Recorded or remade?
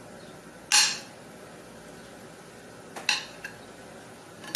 recorded